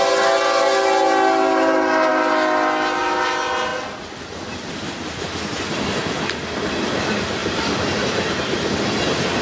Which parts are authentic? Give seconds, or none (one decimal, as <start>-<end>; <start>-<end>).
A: 0.0-9.4